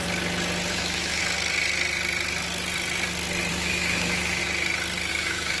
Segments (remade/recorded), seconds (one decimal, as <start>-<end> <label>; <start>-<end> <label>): 0.0-0.7 recorded; 0.7-1.2 remade; 1.2-3.5 recorded; 3.5-4.4 remade; 4.4-5.1 recorded; 5.1-5.6 remade